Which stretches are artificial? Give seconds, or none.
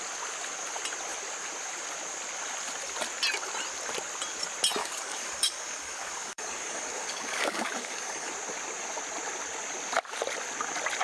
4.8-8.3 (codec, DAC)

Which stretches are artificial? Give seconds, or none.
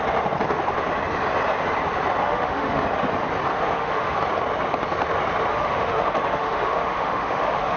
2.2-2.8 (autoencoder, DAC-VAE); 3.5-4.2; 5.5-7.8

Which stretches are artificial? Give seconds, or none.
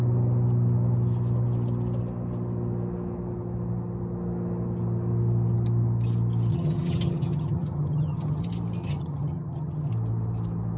6.5-8.4 (vocoder, HiFi-GAN); 8.8-9.9